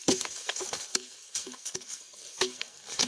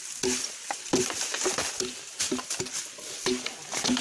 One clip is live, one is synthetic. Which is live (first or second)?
second